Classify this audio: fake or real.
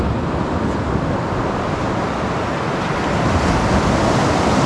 real